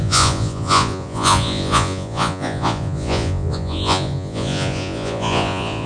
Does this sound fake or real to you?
fake